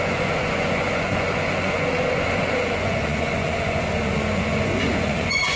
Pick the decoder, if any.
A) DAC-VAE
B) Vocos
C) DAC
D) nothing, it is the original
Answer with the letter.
B